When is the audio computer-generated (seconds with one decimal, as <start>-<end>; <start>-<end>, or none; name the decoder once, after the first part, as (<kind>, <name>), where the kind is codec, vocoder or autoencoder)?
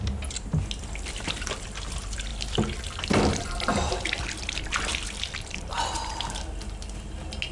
2.3-6.8 (vocoder, BigVGAN v2)